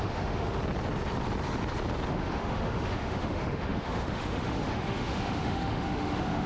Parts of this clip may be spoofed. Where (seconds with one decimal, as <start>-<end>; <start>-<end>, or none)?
0.0-0.6; 2.1-6.5